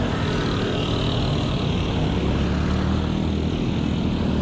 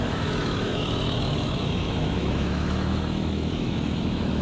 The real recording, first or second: first